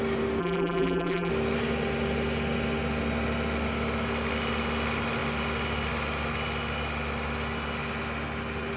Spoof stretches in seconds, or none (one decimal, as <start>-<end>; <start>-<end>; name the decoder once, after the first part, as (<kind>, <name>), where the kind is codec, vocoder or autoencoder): 0.4-1.3 (vocoder, BigVGAN v2)